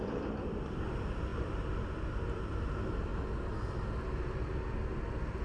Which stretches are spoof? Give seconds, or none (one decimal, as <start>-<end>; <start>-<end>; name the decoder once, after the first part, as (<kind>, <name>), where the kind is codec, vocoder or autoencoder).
0.0-3.1 (vocoder, BigVGAN v2); 5.0-5.4